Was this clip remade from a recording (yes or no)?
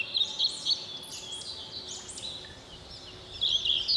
no